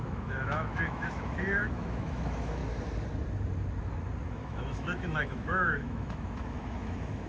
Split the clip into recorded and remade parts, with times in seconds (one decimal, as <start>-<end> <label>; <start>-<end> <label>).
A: 0.0-2.6 remade; 2.6-4.3 recorded; 4.3-7.3 remade